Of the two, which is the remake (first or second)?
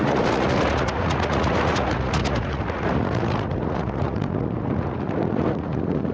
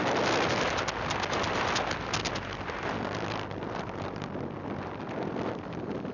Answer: first